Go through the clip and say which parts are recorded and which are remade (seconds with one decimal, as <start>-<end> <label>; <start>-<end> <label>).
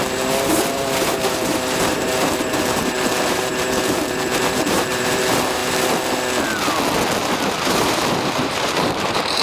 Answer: 0.0-0.5 recorded; 0.5-5.6 remade; 5.6-7.2 recorded; 7.2-9.4 remade